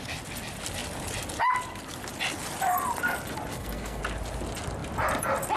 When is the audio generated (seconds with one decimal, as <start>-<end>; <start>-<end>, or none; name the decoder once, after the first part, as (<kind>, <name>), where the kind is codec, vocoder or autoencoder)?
3.5-4.0 (codec, SNAC)